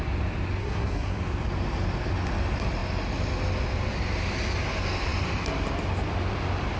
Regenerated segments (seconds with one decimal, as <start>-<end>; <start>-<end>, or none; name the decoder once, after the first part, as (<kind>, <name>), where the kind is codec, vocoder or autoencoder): 0.6-1.2 (codec, SNAC)